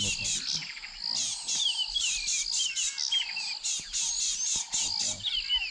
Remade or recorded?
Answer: recorded